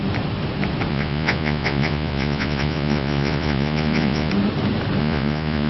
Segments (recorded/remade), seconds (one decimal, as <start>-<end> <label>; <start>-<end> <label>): 0.0-0.9 recorded; 0.9-4.3 remade; 4.3-5.0 recorded; 5.0-5.7 remade